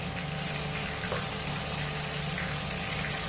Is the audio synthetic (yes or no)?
no